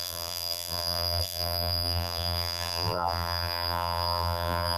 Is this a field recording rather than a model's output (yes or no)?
no